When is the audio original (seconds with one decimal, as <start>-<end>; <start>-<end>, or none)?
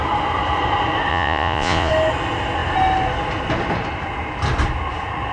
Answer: 0.0-1.1; 1.9-5.3